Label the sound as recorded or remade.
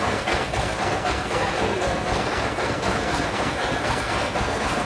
remade